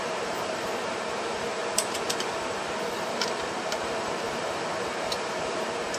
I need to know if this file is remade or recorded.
remade